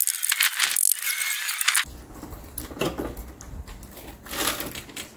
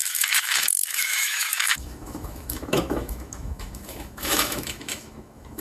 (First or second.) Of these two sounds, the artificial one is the second